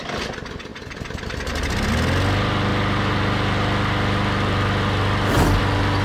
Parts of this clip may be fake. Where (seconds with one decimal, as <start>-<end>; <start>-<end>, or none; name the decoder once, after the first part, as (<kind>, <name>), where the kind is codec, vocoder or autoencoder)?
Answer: none